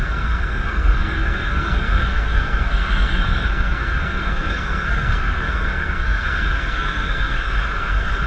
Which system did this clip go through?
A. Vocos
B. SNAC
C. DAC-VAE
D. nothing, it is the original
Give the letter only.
B